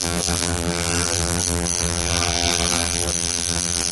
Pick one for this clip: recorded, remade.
remade